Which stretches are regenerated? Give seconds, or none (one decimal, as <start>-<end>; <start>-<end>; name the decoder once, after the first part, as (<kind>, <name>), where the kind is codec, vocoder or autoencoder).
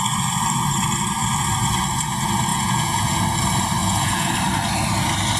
2.5-3.2 (vocoder, Vocos); 3.8-4.3